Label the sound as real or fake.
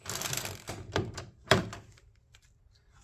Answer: real